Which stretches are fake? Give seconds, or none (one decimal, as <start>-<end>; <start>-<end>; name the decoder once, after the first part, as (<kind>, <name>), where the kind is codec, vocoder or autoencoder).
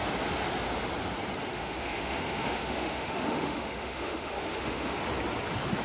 1.5-5.0 (autoencoder, DAC-VAE)